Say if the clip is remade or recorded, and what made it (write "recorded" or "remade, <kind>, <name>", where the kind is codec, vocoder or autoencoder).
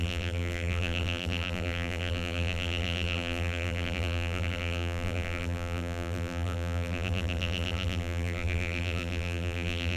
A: remade, vocoder, BigVGAN v2